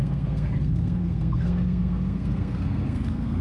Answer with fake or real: fake